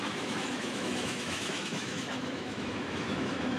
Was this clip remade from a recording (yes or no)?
yes